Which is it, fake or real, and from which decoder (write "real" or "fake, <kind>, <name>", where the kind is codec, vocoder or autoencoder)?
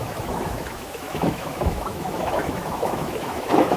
fake, autoencoder, DAC-VAE